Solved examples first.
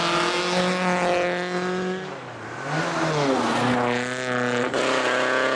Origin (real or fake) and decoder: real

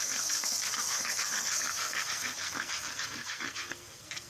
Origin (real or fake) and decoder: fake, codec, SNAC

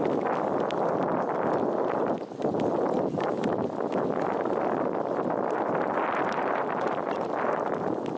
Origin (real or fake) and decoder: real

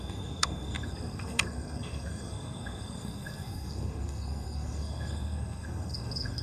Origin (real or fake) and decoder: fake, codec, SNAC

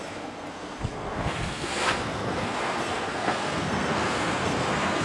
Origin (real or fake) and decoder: fake, codec, SNAC